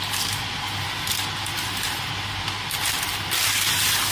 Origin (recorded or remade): remade